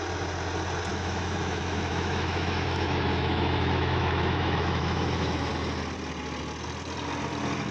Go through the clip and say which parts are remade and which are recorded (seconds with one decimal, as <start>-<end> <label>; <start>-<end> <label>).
0.0-0.9 recorded; 0.9-5.5 remade; 5.5-7.7 recorded

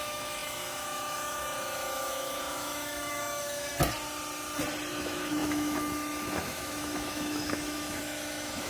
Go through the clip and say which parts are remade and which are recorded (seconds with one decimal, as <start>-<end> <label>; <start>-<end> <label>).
0.0-3.7 remade; 3.7-4.9 recorded; 4.9-8.7 remade

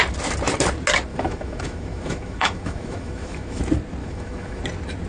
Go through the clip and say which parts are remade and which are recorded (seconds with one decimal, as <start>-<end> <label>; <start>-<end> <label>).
0.0-1.1 recorded; 1.1-3.6 remade; 3.6-4.0 recorded; 4.0-4.6 remade; 4.6-5.1 recorded